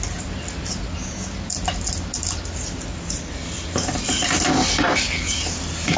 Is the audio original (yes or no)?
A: yes